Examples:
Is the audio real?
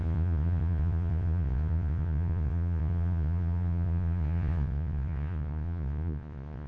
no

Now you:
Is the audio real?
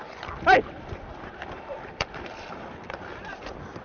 no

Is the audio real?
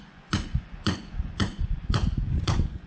no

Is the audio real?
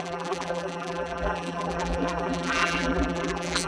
no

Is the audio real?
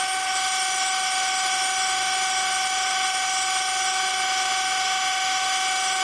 yes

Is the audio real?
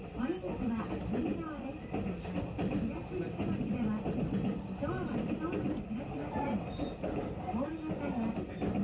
yes